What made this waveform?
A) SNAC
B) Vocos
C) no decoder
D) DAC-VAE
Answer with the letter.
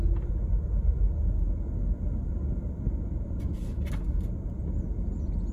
C